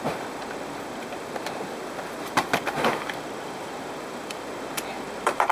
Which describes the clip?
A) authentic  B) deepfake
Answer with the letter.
B